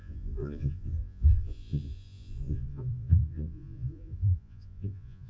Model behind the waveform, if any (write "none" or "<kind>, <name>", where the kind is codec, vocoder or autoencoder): vocoder, Vocos